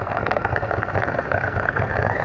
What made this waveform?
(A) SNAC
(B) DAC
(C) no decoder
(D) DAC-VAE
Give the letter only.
A